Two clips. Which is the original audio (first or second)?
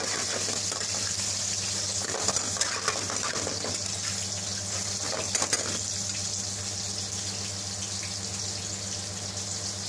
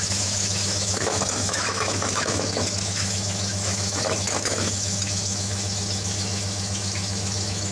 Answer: first